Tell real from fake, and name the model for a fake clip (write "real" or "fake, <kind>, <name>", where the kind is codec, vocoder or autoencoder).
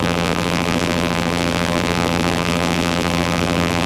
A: fake, vocoder, BigVGAN v2